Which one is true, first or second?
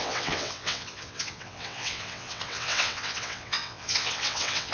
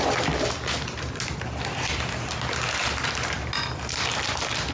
second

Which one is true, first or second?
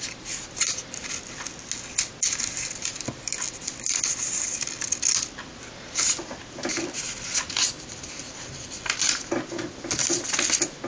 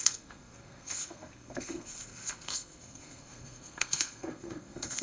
first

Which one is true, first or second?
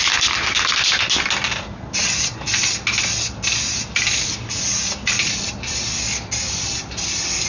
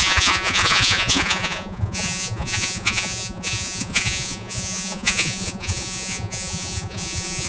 first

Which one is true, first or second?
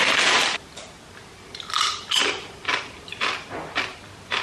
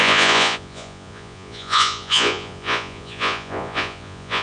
first